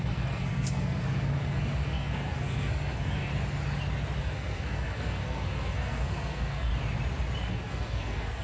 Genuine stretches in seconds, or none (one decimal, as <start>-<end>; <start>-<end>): 3.3-4.2; 6.7-7.5